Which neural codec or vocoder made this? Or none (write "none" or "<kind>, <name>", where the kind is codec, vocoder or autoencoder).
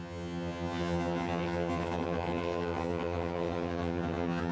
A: vocoder, HiFi-GAN